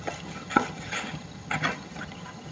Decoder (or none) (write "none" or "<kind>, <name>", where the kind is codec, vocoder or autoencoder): vocoder, HiFi-GAN